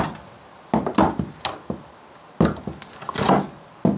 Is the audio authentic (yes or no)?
yes